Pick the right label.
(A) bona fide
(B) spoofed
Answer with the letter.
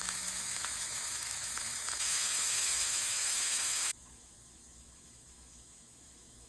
B